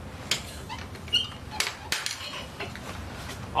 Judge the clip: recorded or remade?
recorded